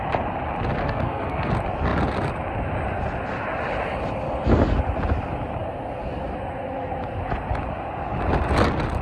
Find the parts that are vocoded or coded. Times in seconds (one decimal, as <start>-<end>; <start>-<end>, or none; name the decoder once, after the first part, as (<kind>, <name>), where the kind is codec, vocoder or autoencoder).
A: 0.8-1.5 (codec, SNAC)